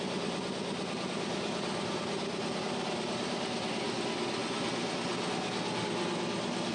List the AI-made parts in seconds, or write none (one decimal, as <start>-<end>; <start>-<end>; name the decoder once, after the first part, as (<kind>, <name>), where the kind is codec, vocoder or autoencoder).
0.0-4.4 (vocoder, BigVGAN v2)